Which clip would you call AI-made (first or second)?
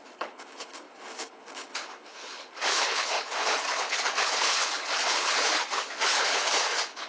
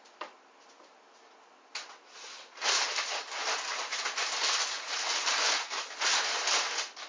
first